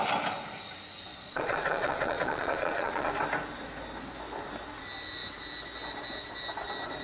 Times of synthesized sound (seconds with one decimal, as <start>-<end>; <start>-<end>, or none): 1.1-3.1